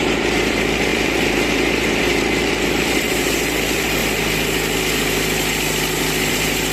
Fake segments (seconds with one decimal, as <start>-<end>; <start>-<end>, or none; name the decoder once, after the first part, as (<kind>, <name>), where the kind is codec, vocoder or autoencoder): 0.0-4.0 (vocoder, BigVGAN v2); 6.3-6.7